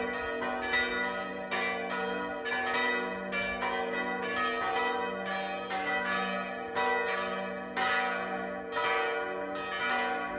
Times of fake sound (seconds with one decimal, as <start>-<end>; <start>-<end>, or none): none